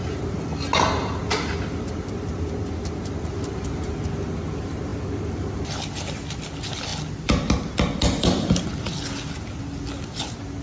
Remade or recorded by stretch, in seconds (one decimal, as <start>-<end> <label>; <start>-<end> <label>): 0.0-10.6 recorded